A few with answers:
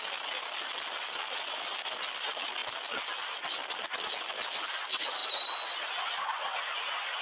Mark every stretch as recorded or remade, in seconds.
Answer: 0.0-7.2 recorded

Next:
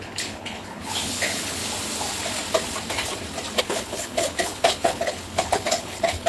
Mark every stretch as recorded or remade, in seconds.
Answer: 0.0-1.6 remade; 1.6-3.6 recorded; 3.6-6.3 remade